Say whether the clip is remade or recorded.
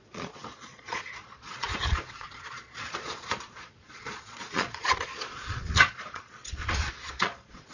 remade